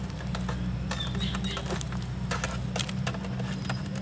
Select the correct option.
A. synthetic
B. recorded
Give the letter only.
B